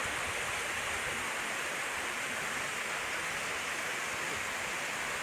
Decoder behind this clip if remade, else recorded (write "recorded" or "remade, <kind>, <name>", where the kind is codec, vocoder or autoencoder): recorded